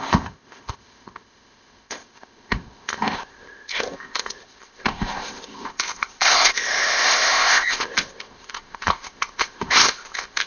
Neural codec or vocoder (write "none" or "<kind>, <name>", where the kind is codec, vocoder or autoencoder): codec, ZipCodec